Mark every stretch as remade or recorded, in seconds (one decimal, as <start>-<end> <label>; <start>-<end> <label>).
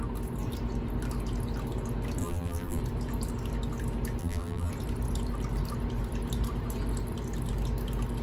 0.0-2.2 recorded; 2.2-2.8 remade; 2.8-4.2 recorded; 4.2-4.7 remade; 4.7-8.2 recorded